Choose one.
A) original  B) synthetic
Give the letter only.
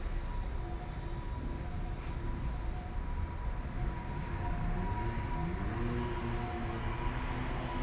A